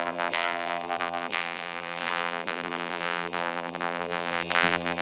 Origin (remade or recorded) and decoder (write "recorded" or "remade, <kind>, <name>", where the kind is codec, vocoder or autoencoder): remade, vocoder, BigVGAN v2